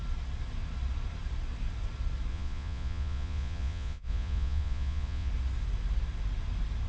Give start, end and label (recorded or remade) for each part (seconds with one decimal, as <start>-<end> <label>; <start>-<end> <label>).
0.0-2.3 recorded; 2.3-5.3 remade; 5.3-6.9 recorded

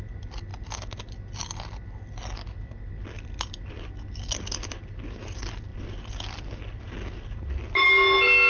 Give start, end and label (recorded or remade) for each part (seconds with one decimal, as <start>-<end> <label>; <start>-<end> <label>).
0.0-8.5 recorded

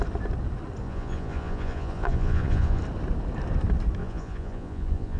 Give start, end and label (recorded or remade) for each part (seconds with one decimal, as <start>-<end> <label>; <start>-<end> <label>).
0.0-0.8 recorded; 0.8-2.8 remade; 2.8-4.0 recorded; 4.0-5.2 remade

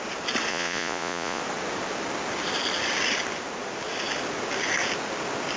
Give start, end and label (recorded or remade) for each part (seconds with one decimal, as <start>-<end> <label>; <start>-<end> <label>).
0.0-0.5 recorded; 0.5-1.4 remade; 1.4-5.6 recorded

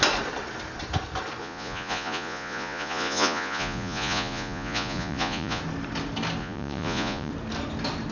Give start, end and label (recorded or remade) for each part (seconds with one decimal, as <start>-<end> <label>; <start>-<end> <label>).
0.0-1.4 recorded; 1.4-5.6 remade; 5.6-6.4 recorded; 6.4-7.3 remade; 7.3-8.1 recorded